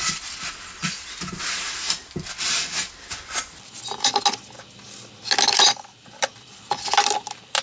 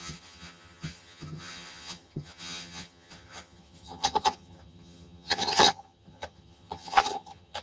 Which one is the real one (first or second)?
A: first